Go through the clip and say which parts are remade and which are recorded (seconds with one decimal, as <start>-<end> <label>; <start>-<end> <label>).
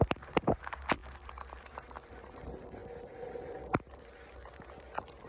0.0-5.3 recorded